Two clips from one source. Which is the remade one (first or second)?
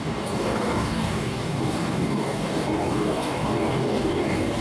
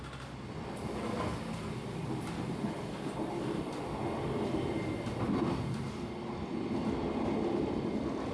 first